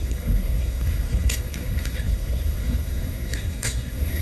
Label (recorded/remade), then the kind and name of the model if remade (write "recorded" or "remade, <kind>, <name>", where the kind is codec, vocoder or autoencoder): remade, codec, SNAC